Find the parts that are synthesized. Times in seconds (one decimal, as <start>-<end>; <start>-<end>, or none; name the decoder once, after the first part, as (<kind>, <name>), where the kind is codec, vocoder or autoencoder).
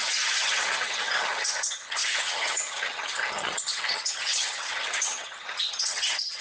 0.0-6.4 (vocoder, HiFi-GAN)